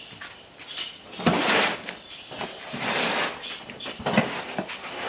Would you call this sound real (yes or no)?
yes